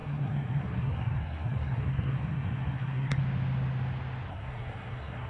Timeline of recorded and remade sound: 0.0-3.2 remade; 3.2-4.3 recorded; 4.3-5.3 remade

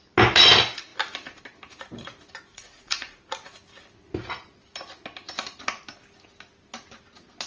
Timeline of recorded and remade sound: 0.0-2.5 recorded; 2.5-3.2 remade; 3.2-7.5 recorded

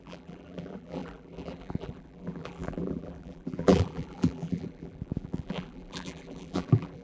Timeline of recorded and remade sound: 0.0-7.0 remade

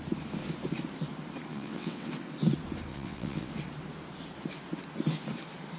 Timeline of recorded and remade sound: 0.0-1.5 recorded; 1.5-2.1 remade; 2.1-2.9 recorded; 2.9-3.5 remade; 3.5-5.8 recorded